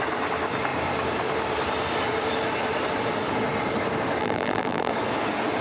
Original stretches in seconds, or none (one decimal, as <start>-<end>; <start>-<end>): 0.0-4.2; 4.9-5.6